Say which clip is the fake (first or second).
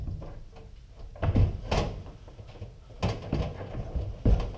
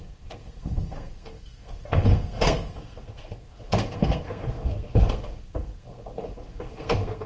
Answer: second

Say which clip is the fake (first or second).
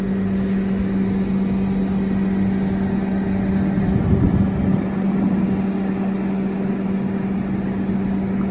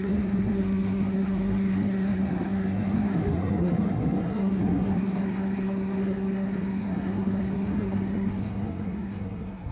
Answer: second